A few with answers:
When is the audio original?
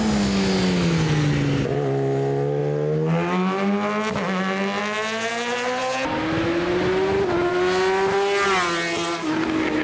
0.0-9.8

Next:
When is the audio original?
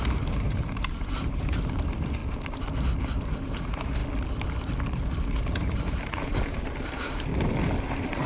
2.2-3.3; 4.0-5.4; 7.3-7.9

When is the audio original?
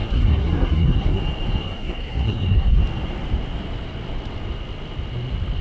1.2-1.6; 2.8-5.6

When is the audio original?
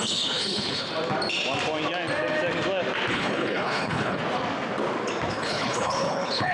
0.9-3.1; 4.2-5.3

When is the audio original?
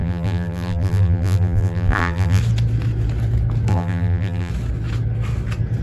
2.4-3.7; 4.5-5.8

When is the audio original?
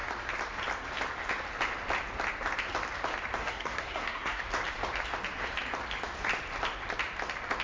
0.0-3.4; 4.4-7.6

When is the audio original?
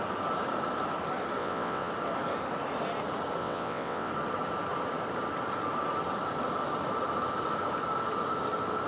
0.0-1.4; 1.9-3.4; 4.1-8.9